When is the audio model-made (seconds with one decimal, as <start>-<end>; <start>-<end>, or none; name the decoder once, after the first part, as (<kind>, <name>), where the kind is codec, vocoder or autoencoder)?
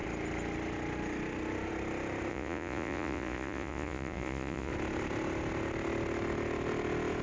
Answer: 2.3-4.7 (vocoder, Vocos)